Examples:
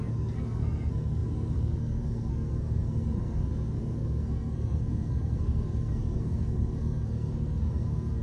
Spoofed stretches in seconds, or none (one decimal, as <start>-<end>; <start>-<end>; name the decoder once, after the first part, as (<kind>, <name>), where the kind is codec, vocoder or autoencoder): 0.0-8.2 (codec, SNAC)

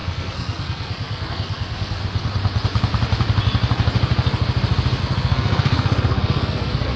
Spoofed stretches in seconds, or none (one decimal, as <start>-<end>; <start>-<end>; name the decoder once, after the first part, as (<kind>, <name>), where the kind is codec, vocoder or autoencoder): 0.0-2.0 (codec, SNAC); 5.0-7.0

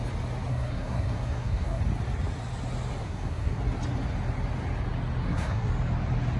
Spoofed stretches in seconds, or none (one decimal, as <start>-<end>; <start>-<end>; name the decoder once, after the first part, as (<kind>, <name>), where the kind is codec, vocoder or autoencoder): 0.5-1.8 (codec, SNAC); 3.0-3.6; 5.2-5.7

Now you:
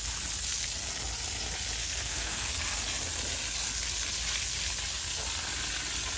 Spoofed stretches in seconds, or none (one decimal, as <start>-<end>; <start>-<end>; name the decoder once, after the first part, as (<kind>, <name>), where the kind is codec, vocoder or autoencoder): 1.8-2.5 (codec, SNAC)